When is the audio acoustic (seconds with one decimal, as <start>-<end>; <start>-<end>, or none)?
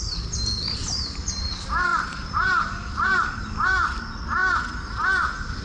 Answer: 0.0-1.9; 3.4-5.6